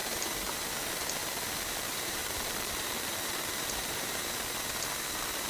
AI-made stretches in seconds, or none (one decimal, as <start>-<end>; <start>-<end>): 1.7-4.2; 5.1-5.5